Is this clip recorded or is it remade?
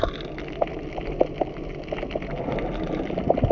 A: recorded